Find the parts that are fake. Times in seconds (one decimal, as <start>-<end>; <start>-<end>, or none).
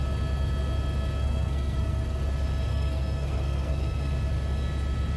1.2-2.2; 2.7-4.1